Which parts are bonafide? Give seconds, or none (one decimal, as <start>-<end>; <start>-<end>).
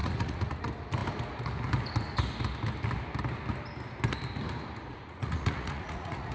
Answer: 0.6-4.9